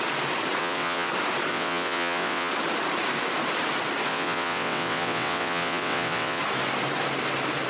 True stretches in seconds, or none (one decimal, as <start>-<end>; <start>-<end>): 0.0-0.6; 1.1-1.5; 2.5-4.1; 6.4-7.7

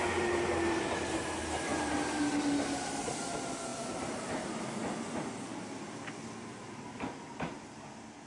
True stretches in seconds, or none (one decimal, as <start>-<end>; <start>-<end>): 0.0-8.3

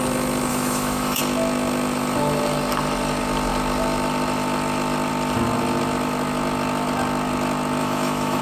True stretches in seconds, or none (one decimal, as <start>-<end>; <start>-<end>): 0.0-0.5; 1.2-7.8

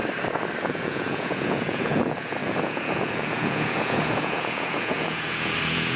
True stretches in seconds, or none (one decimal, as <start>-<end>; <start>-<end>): 0.0-0.6

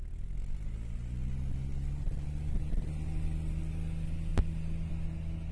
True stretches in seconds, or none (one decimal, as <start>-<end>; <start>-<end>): 0.0-5.5

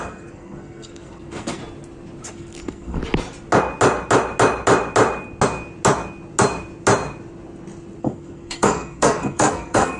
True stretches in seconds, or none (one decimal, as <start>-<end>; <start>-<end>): 1.6-2.3; 3.0-8.0